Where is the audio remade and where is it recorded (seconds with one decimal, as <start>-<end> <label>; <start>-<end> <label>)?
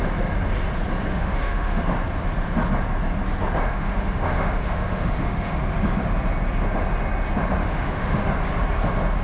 0.0-1.1 recorded; 1.1-1.8 remade; 1.8-3.6 recorded; 3.6-5.6 remade; 5.6-7.6 recorded; 7.6-8.3 remade; 8.3-9.2 recorded